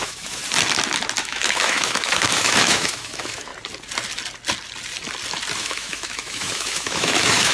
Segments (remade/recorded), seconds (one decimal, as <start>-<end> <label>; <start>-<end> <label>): 0.0-0.4 remade; 0.4-1.2 recorded; 1.2-3.5 remade; 3.5-5.6 recorded; 5.6-7.5 remade